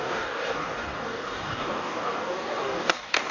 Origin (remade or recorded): remade